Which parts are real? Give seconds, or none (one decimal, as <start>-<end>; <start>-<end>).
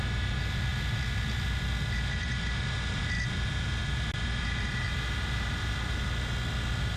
0.0-7.0